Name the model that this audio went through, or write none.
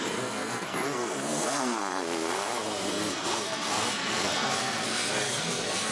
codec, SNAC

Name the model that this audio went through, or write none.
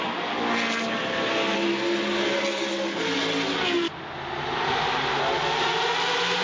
none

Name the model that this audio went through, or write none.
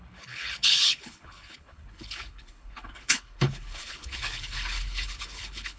codec, HILCodec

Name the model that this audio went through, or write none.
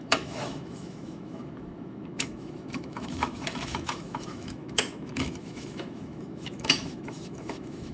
autoencoder, DAC-VAE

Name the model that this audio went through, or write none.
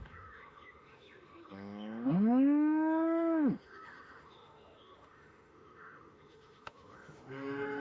autoencoder, DAC-VAE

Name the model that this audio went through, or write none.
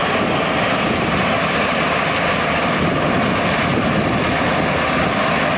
none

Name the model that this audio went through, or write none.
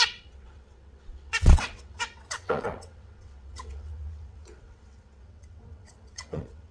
vocoder, WaveNeXt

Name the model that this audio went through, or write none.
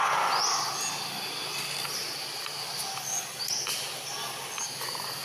none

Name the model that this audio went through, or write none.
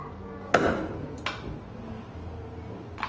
none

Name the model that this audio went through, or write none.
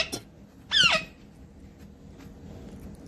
none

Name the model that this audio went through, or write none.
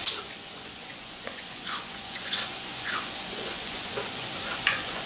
vocoder, Vocos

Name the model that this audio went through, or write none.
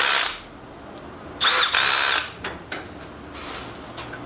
none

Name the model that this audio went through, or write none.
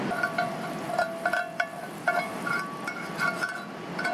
none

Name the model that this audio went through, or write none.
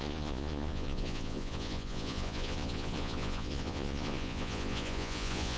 vocoder, Vocos